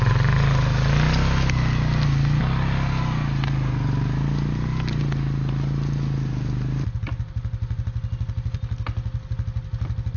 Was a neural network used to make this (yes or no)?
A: no